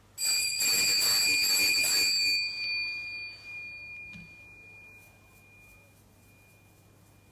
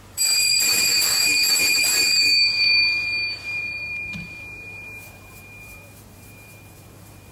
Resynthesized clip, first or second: second